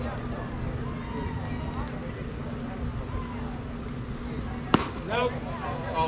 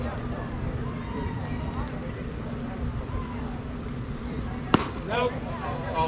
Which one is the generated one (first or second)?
second